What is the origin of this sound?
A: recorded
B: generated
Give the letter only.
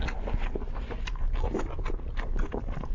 A